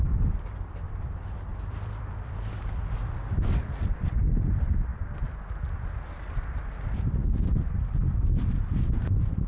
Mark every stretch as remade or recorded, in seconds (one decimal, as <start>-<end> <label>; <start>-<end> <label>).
0.0-7.2 remade; 7.2-7.9 recorded; 7.9-9.5 remade